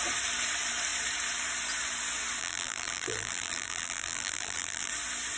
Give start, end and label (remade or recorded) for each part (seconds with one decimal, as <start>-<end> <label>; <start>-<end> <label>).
0.0-2.4 recorded; 2.4-4.9 remade; 4.9-5.4 recorded